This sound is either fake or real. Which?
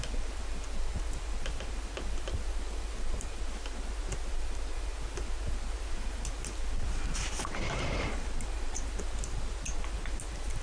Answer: real